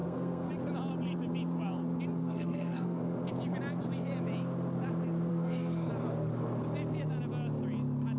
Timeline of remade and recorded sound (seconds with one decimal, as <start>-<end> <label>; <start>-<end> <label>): 0.0-0.5 remade; 0.5-2.2 recorded; 2.2-3.0 remade; 3.0-5.3 recorded; 5.3-5.9 remade; 5.9-8.2 recorded